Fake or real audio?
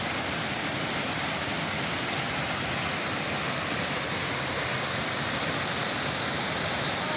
real